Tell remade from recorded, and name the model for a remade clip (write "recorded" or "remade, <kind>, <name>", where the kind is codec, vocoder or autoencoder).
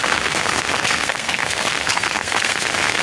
remade, codec, SNAC